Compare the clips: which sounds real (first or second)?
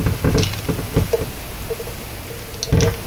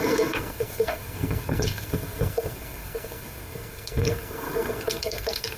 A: first